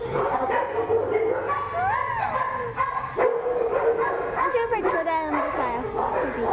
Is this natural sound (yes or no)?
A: yes